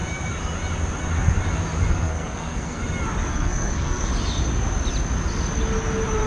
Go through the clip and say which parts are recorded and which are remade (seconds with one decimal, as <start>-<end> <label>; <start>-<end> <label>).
0.0-1.9 recorded; 1.9-2.8 remade; 2.8-3.3 recorded; 3.3-4.1 remade; 4.1-6.3 recorded